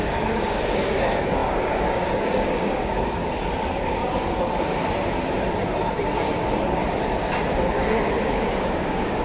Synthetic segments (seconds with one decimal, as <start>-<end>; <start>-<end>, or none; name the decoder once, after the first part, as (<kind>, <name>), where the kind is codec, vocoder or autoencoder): 0.0-3.2 (codec, DAC); 8.3-9.2